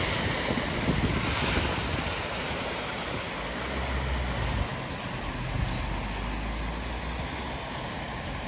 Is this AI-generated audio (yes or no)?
no